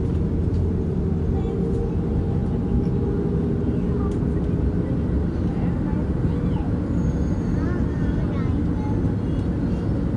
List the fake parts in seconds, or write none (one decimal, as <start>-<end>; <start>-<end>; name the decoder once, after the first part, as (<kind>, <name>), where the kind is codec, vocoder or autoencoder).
none